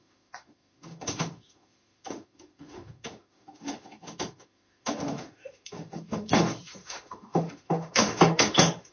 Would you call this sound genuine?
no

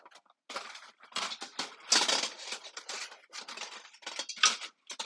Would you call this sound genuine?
yes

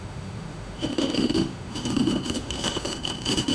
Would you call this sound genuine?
no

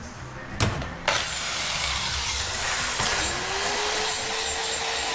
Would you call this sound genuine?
yes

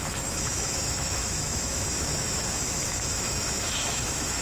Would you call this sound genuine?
no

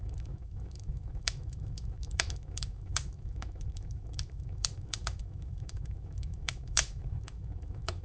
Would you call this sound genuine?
no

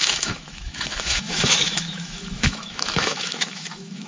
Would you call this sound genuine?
no